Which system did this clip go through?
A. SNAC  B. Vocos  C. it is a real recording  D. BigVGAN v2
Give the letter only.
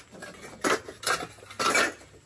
C